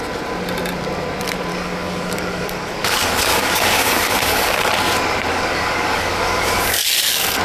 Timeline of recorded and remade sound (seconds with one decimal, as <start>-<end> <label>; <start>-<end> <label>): 0.0-1.5 recorded; 1.5-4.7 remade; 4.7-5.3 recorded; 5.3-7.4 remade